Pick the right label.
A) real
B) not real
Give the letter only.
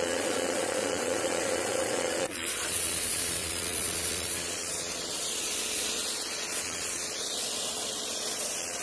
B